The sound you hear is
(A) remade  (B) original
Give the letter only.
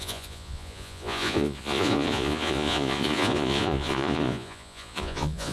A